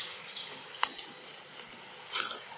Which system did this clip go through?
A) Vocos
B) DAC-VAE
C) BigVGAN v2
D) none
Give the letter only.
D